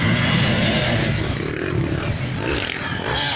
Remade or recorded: recorded